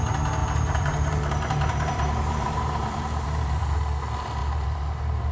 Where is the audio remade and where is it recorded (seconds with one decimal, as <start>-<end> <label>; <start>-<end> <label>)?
0.0-0.4 recorded; 0.4-3.6 remade; 3.6-4.4 recorded; 4.4-5.3 remade